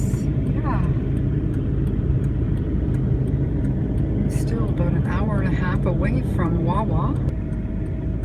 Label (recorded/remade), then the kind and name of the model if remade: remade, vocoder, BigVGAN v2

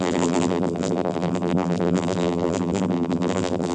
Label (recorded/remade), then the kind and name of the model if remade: remade, vocoder, BigVGAN v2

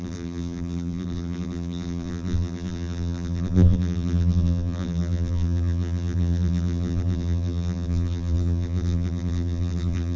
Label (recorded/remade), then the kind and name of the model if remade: remade, vocoder, BigVGAN v2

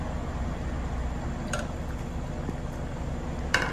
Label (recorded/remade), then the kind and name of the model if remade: recorded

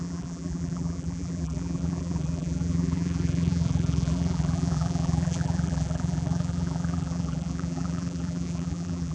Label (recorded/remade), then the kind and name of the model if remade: remade, vocoder, BigVGAN v2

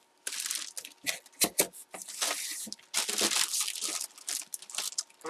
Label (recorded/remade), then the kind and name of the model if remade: recorded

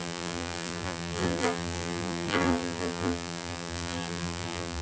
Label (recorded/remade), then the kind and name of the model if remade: remade, vocoder, BigVGAN v2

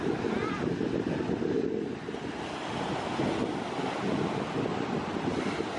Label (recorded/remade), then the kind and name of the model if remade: recorded